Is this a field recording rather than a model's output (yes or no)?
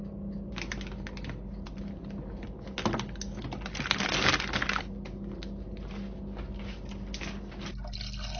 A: yes